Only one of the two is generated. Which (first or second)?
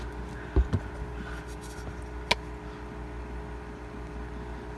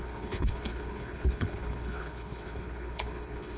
second